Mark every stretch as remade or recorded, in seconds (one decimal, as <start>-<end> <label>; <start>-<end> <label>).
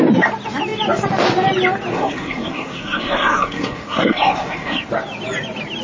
0.0-1.9 recorded; 1.9-4.9 remade; 4.9-5.8 recorded